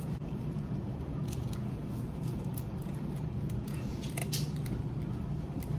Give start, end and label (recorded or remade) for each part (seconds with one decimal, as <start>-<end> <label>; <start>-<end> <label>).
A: 0.0-4.2 remade; 4.2-5.8 recorded